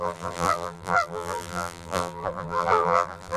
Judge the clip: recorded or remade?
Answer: remade